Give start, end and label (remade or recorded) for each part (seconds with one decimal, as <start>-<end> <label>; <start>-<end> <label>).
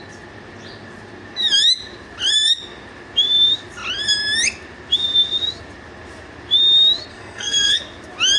0.0-7.1 recorded; 7.1-7.8 remade; 7.8-8.4 recorded